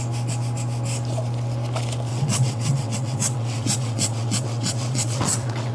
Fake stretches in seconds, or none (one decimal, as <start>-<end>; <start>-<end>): 2.1-5.7